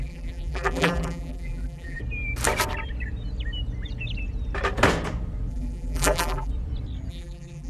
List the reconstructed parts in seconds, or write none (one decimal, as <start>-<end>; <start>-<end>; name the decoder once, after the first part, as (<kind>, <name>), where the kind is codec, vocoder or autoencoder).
0.0-2.0 (vocoder, BigVGAN v2); 5.5-6.5; 7.1-7.7